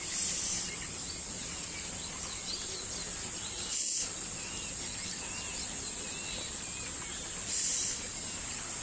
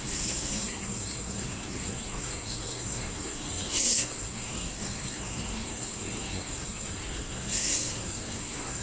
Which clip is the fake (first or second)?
second